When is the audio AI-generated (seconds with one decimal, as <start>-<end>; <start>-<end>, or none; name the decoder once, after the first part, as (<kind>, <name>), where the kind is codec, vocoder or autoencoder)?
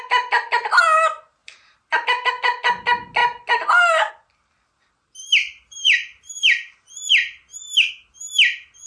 1.4-2.3 (vocoder, BigVGAN v2); 5.4-7.9